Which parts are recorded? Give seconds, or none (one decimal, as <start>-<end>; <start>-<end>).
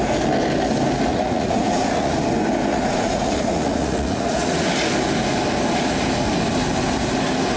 0.0-1.1; 2.1-2.7; 4.7-7.6